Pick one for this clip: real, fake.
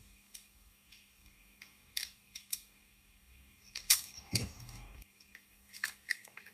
fake